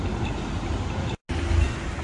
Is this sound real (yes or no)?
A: yes